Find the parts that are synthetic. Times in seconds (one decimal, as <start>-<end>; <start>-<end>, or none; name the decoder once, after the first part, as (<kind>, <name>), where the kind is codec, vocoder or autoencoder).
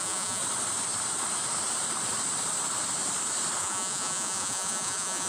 0.0-0.4 (vocoder, Vocos); 3.6-5.3